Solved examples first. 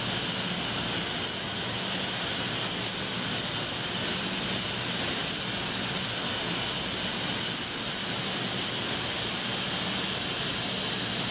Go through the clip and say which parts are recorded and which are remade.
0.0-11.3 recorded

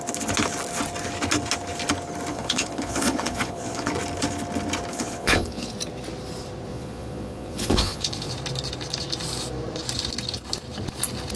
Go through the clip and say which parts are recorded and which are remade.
0.0-2.3 recorded; 2.3-3.9 remade; 3.9-4.9 recorded; 4.9-5.7 remade; 5.7-6.7 recorded; 6.7-8.3 remade; 8.3-11.4 recorded